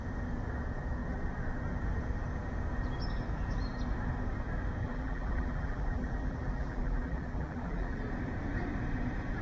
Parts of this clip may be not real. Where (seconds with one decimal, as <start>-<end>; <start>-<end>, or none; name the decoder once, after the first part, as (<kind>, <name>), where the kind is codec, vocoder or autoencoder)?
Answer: 4.8-8.0 (vocoder, BigVGAN v2)